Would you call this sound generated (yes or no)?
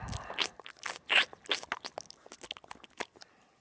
no